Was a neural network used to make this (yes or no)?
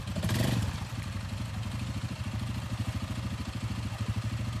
no